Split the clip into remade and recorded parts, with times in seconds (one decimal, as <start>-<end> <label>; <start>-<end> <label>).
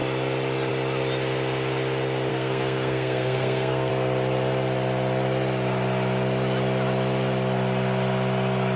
0.0-2.3 recorded; 2.3-3.9 remade; 3.9-8.8 recorded